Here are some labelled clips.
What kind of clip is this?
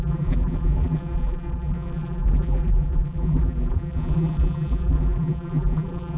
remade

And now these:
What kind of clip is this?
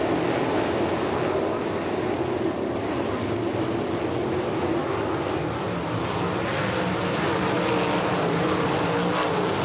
recorded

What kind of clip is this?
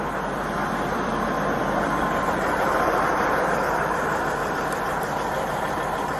remade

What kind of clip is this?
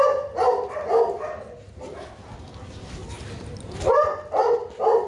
recorded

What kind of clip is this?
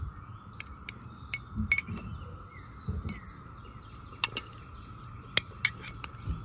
recorded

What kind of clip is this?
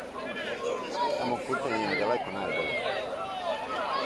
recorded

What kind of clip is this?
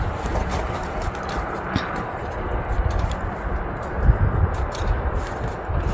remade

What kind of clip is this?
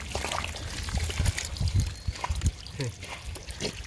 recorded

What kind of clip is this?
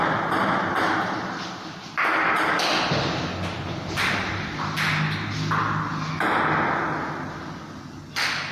recorded